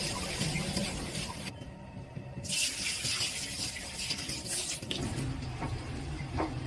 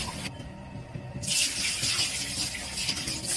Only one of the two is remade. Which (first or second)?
first